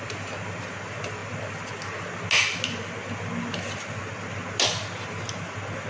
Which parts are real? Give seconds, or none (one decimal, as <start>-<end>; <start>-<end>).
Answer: 0.0-5.9